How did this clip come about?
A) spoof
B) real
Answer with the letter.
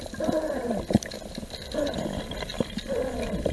B